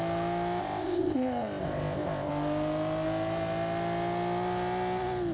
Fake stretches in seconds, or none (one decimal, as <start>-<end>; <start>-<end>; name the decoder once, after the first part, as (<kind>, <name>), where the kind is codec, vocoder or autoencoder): 0.6-2.3 (codec, ZipCodec)